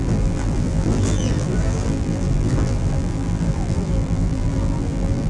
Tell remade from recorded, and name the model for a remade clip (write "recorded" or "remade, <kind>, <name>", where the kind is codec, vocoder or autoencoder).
remade, vocoder, BigVGAN v2